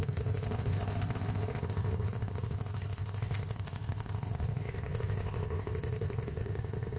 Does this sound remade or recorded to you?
remade